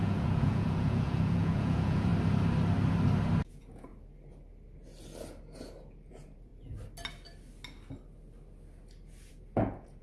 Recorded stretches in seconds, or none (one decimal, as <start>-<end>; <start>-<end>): 2.1-3.5; 3.9-6.1; 6.5-9.3